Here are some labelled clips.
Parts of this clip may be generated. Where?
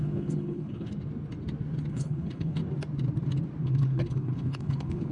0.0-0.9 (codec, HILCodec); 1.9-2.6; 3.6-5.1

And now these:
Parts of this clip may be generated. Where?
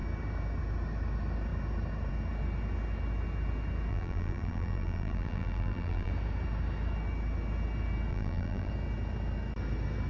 3.9-6.1 (vocoder, BigVGAN v2); 8.1-8.7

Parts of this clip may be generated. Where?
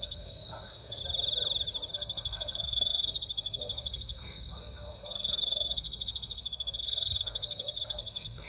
0.0-1.0 (codec, SNAC); 1.9-8.5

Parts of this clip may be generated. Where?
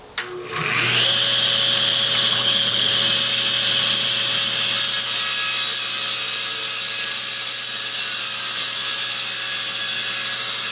2.3-2.9 (codec, HILCodec)